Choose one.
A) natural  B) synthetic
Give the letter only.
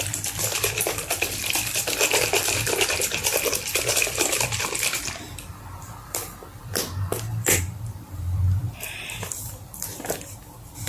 B